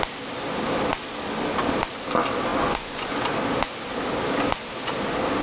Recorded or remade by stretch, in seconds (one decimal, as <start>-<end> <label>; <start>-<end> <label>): 0.0-2.5 recorded; 2.5-3.1 remade; 3.1-5.4 recorded